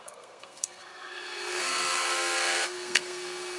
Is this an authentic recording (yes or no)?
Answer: no